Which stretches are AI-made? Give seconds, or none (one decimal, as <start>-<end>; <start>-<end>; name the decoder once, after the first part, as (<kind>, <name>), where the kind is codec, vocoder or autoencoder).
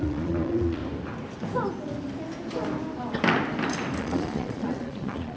0.0-0.8 (vocoder, Vocos); 4.0-5.4